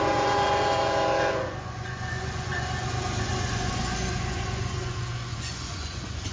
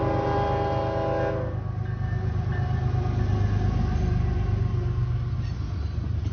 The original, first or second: second